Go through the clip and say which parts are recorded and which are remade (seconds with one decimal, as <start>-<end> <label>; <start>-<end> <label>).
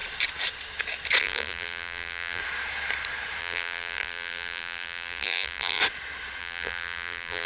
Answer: 0.0-1.2 recorded; 1.2-2.4 remade; 2.4-3.4 recorded; 3.4-5.8 remade; 5.8-6.4 recorded; 6.4-7.5 remade